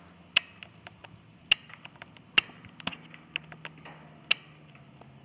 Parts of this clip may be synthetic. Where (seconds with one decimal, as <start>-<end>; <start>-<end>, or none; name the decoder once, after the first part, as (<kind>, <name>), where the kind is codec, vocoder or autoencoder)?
none